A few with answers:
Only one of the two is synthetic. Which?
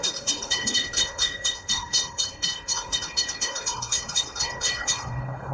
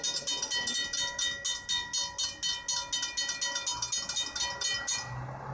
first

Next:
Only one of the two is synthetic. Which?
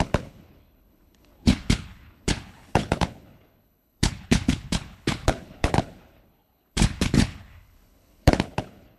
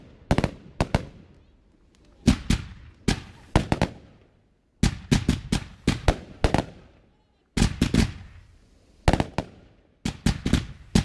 first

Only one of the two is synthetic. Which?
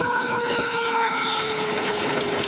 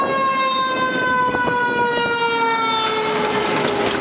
first